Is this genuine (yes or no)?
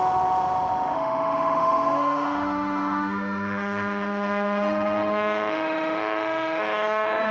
no